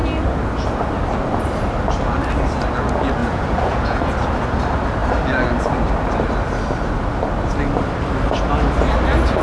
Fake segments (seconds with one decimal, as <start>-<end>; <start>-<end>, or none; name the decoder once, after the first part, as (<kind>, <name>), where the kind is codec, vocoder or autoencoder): 3.2-4.0 (vocoder, Vocos)